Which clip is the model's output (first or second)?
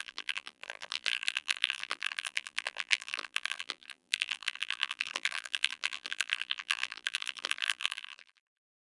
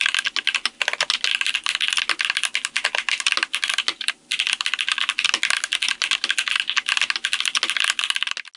first